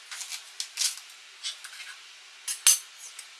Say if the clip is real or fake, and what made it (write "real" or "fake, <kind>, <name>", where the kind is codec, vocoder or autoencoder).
real